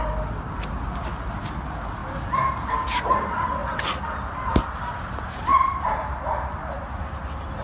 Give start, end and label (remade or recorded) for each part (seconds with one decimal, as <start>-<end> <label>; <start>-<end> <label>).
0.0-7.6 recorded